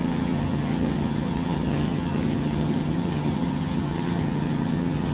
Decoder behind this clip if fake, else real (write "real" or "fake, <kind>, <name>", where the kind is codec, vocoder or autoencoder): fake, vocoder, HiFi-GAN